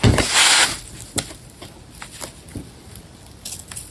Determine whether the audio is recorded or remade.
recorded